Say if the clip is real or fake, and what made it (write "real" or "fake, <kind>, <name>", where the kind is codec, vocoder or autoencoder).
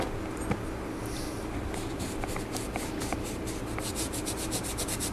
real